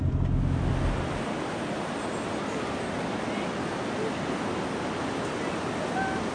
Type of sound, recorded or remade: recorded